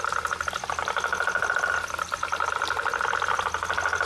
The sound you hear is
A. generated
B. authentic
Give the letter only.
B